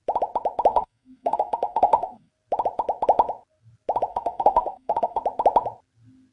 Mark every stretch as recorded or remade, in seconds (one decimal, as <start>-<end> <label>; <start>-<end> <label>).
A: 0.0-0.7 recorded; 0.7-2.3 remade; 2.3-4.1 recorded; 4.1-5.2 remade; 5.2-6.3 recorded